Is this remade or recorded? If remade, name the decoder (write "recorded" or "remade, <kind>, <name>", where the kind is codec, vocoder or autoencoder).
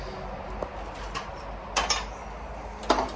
recorded